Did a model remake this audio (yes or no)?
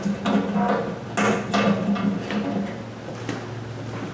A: no